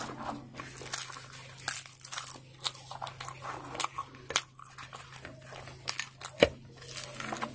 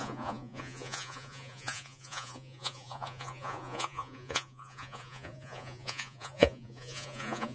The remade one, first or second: second